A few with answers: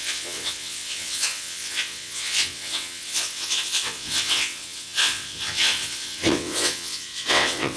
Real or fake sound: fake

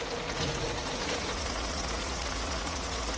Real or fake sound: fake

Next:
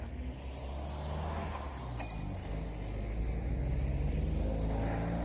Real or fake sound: real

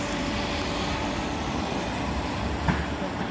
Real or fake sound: real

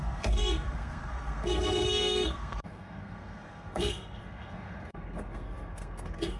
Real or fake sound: fake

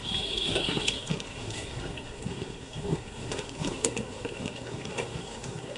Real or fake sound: fake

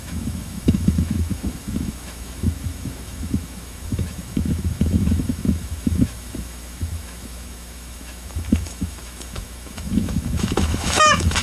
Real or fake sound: fake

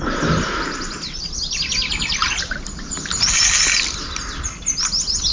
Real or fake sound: real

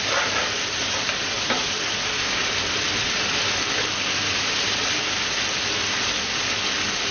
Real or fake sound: real